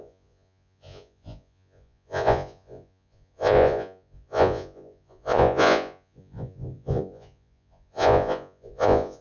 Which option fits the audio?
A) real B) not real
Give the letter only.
B